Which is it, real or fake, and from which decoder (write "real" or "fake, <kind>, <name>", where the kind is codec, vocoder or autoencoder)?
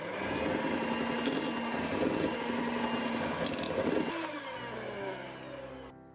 real